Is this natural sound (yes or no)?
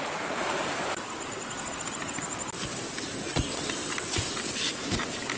yes